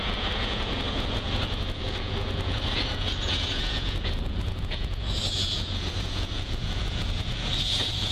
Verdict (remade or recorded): remade